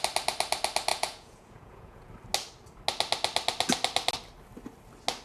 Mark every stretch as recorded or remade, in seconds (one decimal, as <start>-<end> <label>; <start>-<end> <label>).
0.0-0.9 recorded; 0.9-2.1 remade; 2.1-5.2 recorded

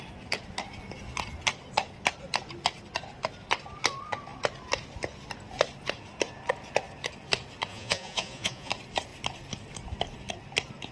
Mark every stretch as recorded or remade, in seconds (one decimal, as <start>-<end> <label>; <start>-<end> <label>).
0.0-7.7 recorded; 7.7-8.7 remade; 8.7-10.9 recorded